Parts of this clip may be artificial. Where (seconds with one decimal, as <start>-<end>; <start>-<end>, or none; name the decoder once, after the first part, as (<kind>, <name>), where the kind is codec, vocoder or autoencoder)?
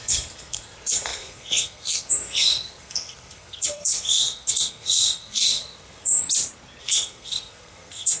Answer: 0.0-6.2 (codec, SNAC); 6.8-8.2